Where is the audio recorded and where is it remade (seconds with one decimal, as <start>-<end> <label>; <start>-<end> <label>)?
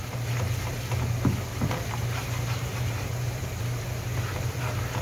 0.0-1.5 recorded; 1.5-3.8 remade; 3.8-5.0 recorded